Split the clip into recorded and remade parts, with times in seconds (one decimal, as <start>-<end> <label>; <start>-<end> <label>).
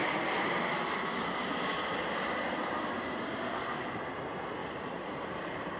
0.0-0.7 remade; 0.7-4.6 recorded; 4.6-5.8 remade